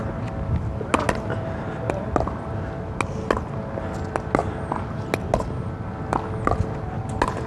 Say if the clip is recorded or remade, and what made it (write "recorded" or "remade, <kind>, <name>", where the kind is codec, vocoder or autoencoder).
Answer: recorded